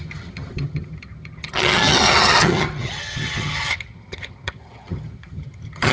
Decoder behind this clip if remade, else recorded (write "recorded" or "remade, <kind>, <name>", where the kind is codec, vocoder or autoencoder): remade, vocoder, HiFi-GAN